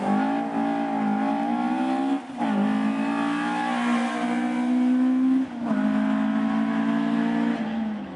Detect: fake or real real